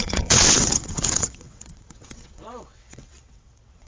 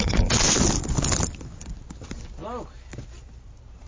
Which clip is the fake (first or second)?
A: first